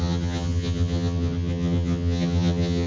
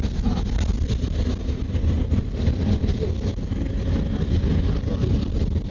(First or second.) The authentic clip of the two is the second